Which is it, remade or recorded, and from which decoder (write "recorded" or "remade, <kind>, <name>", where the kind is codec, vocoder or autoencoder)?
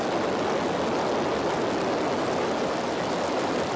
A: recorded